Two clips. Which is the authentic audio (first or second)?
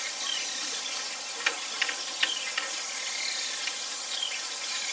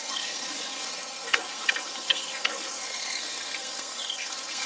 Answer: first